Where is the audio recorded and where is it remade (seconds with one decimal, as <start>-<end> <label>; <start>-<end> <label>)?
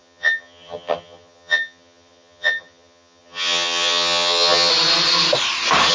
0.0-4.7 remade; 4.7-5.9 recorded